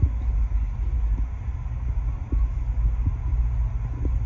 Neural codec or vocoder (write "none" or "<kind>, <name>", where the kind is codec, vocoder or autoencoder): none